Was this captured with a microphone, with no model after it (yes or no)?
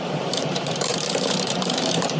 no